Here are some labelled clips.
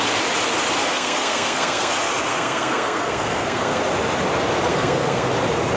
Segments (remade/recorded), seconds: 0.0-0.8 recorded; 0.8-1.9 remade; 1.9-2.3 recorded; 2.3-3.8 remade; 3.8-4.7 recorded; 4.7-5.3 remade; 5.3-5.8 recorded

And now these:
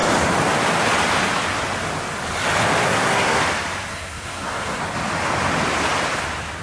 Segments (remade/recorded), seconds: 0.0-2.8 recorded; 2.8-3.4 remade; 3.4-3.9 recorded; 3.9-4.8 remade; 4.8-6.6 recorded

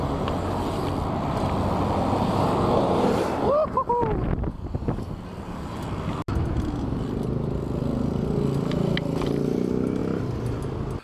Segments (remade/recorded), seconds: 0.0-11.0 recorded

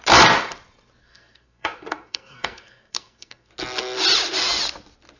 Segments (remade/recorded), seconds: 0.0-1.0 recorded; 1.0-3.5 remade; 3.5-5.2 recorded